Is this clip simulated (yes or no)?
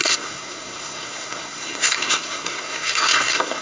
yes